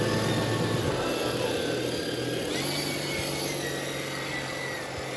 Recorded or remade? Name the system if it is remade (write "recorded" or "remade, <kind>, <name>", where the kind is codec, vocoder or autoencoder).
recorded